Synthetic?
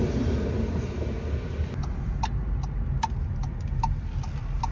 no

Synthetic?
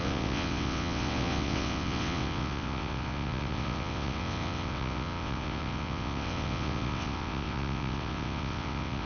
yes